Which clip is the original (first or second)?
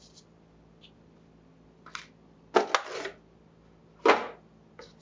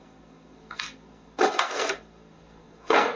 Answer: first